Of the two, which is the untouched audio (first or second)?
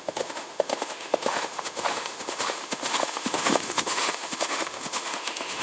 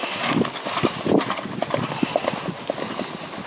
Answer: second